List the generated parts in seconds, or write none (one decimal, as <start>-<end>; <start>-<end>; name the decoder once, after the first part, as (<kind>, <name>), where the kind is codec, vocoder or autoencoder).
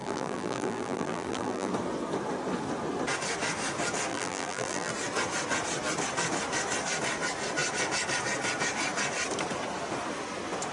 0.0-1.7 (vocoder, BigVGAN v2); 4.1-4.9